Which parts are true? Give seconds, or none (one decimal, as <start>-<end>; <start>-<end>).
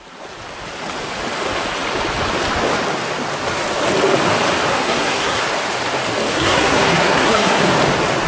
0.0-4.7; 5.4-6.3; 7.7-8.3